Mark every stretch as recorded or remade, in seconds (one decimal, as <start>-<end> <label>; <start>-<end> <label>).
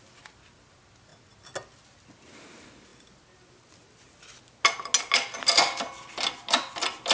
0.0-7.1 recorded